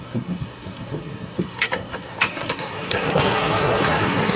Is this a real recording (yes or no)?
no